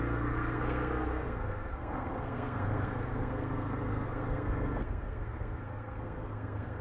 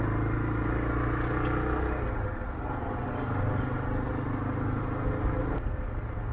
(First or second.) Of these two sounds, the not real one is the first